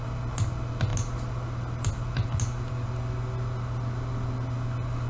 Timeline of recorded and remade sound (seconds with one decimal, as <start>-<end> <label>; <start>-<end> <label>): 0.0-5.1 recorded